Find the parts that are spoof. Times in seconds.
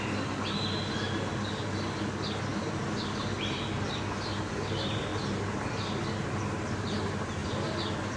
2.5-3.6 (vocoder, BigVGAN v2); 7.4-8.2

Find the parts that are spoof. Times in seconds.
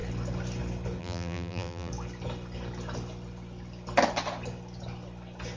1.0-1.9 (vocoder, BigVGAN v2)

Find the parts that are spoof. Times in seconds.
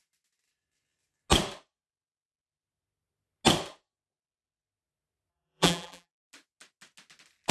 5.3-6.3 (vocoder, BigVGAN v2)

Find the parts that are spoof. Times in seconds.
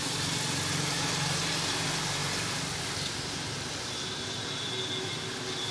none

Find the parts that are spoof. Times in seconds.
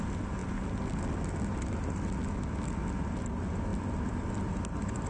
3.7-5.1 (vocoder, BigVGAN v2)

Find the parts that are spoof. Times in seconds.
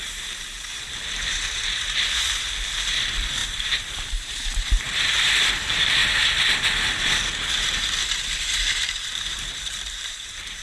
0.0-6.0 (vocoder, BigVGAN v2); 7.5-10.6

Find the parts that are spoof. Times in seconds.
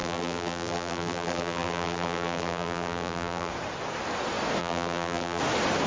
0.0-3.5 (vocoder, BigVGAN v2); 4.6-5.4